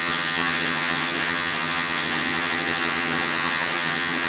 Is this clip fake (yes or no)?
yes